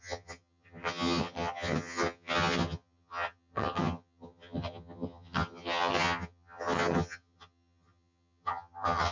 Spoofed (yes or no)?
yes